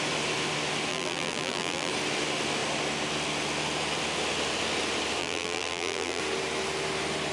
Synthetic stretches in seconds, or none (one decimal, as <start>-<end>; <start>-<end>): 0.9-1.9; 5.2-6.2